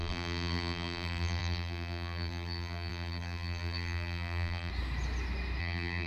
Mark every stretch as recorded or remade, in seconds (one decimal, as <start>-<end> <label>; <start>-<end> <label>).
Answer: 0.0-4.7 remade; 4.7-5.6 recorded; 5.6-6.1 remade